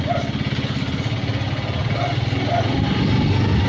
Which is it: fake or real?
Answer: real